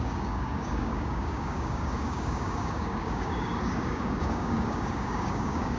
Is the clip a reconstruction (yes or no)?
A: yes